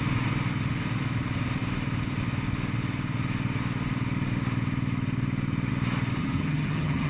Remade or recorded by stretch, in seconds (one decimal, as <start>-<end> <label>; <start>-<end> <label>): 0.0-6.2 recorded; 6.2-7.1 remade